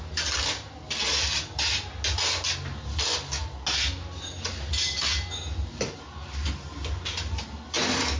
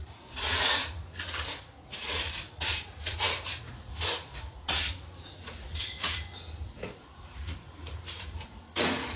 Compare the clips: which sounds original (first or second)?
first